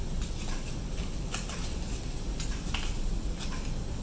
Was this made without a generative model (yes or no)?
yes